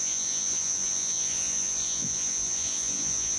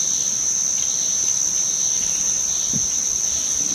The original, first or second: second